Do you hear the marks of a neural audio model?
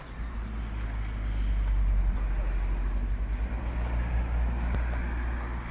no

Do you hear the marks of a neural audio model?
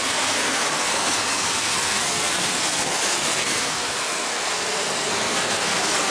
yes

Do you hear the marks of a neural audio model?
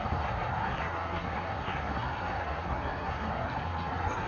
yes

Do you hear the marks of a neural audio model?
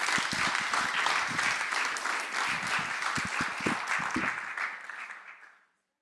no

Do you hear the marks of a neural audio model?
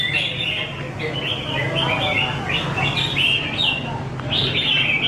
no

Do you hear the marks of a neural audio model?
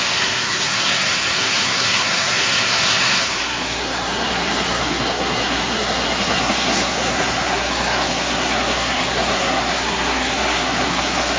yes